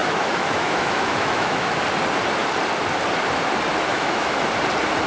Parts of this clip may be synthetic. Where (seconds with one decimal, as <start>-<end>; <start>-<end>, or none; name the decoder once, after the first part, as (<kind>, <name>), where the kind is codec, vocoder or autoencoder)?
0.0-1.8 (autoencoder, DAC-VAE); 3.9-4.4